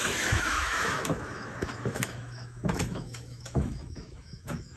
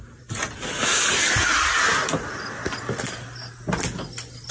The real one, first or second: second